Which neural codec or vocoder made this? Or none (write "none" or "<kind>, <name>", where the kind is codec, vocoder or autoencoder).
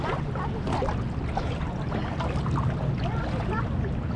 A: none